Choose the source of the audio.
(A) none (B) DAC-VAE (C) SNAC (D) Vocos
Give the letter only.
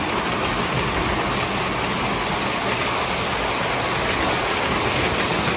A